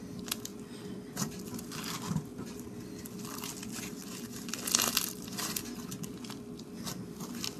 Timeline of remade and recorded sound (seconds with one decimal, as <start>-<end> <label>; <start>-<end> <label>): 0.0-7.6 recorded